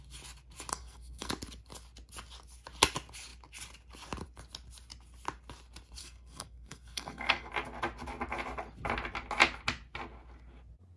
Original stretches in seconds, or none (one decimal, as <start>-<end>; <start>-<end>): 0.0-0.7; 1.3-6.0; 7.5-11.0